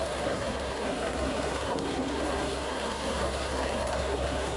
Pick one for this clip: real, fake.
fake